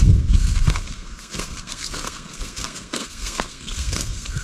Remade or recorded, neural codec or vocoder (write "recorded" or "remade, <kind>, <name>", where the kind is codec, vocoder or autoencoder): remade, codec, SNAC